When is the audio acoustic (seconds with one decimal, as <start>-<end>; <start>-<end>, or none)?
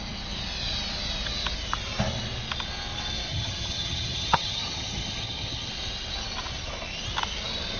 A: 0.0-3.3; 5.7-7.8